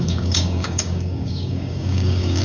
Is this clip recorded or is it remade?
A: remade